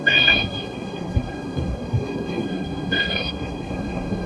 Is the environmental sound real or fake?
fake